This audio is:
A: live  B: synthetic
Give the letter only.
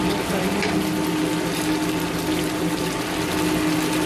A